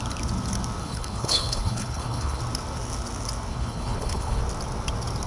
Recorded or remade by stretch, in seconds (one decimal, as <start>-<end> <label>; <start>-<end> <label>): 0.0-0.8 recorded; 0.8-2.4 remade; 2.4-3.5 recorded; 3.5-4.4 remade; 4.4-5.3 recorded